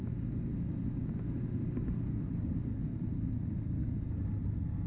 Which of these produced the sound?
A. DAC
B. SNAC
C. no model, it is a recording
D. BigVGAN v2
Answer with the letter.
C